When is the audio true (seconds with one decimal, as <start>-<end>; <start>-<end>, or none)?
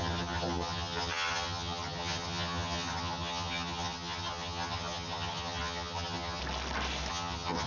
6.4-7.1